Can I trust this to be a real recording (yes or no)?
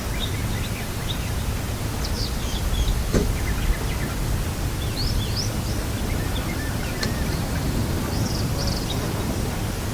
yes